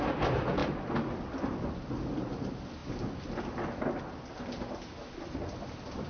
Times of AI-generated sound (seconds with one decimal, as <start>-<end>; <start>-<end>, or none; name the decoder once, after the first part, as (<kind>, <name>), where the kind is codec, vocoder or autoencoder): none